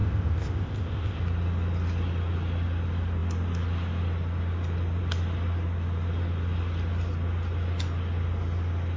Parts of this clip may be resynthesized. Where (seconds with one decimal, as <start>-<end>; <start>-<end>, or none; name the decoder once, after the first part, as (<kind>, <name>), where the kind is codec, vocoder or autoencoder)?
0.0-1.2 (codec, ZipCodec)